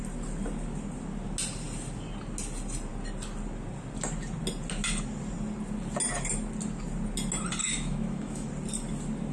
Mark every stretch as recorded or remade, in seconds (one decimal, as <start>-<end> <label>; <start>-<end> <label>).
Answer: 0.0-7.6 recorded; 7.6-8.5 remade; 8.5-9.3 recorded